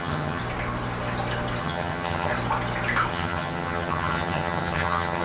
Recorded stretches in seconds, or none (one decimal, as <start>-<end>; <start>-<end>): 0.4-1.6; 2.3-3.1